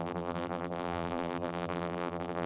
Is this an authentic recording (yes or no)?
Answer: no